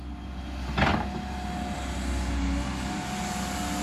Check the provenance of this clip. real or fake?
real